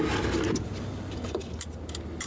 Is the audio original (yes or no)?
yes